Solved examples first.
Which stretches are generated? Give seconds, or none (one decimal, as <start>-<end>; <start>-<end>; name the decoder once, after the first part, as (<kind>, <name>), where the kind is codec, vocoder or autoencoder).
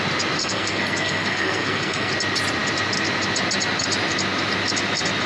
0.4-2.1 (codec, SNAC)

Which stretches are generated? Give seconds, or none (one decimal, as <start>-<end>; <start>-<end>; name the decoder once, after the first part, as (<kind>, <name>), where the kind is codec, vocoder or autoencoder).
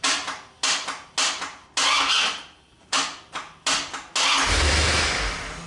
none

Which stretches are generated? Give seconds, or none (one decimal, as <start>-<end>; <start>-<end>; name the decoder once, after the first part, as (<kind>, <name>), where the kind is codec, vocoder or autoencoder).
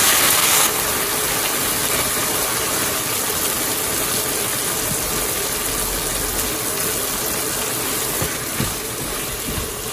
0.0-0.8 (codec, SNAC)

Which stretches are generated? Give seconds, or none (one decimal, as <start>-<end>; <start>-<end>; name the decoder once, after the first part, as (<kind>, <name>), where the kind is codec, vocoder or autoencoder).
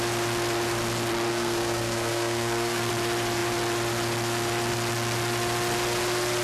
1.3-2.9 (codec, SNAC)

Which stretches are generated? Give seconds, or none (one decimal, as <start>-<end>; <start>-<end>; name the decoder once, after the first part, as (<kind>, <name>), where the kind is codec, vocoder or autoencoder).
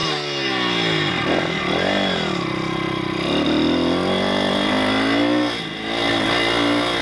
none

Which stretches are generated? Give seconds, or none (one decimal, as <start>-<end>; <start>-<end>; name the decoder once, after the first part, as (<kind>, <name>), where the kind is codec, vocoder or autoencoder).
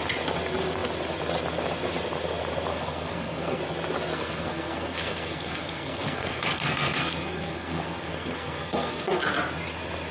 2.7-3.6 (codec, SNAC); 4.1-9.3